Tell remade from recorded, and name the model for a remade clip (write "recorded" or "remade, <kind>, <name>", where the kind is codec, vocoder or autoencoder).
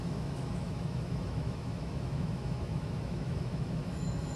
remade, autoencoder, DAC-VAE